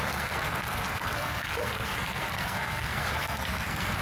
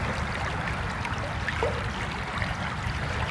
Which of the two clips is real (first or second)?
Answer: second